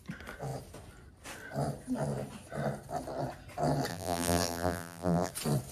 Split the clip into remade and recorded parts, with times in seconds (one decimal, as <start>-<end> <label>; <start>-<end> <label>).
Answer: 0.0-3.9 recorded; 3.9-5.3 remade; 5.3-5.7 recorded